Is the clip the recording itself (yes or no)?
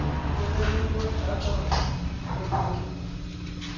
yes